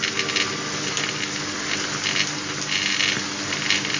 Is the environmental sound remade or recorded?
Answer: recorded